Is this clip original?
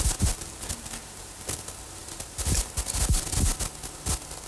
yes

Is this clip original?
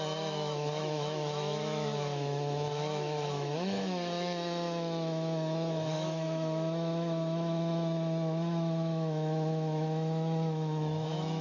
no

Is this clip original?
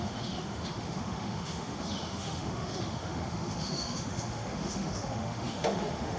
no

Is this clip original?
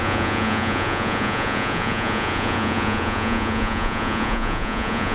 no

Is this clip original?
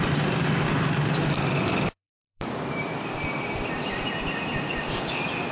no